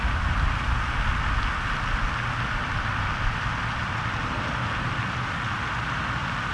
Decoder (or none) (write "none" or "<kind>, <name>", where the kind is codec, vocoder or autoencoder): none